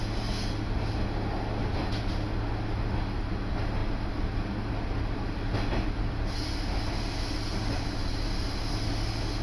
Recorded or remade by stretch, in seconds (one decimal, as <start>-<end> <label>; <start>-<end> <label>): 0.0-9.4 recorded